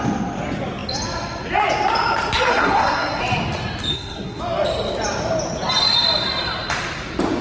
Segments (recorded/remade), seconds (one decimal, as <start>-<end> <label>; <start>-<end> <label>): 0.0-2.5 recorded; 2.5-3.2 remade; 3.2-3.9 recorded; 3.9-4.4 remade; 4.4-7.4 recorded